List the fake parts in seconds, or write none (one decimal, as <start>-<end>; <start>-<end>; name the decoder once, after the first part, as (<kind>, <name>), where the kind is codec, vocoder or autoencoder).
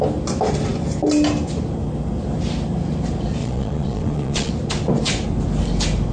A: 3.4-4.5 (vocoder, Vocos)